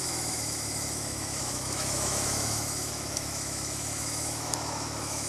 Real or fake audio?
fake